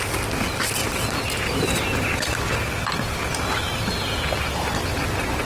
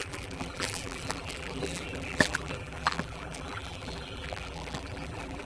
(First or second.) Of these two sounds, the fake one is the second